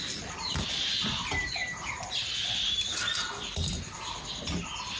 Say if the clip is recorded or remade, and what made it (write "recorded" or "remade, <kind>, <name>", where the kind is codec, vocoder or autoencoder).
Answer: recorded